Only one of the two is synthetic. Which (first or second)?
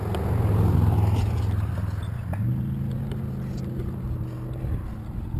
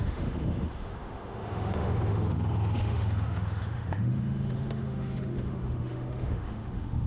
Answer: second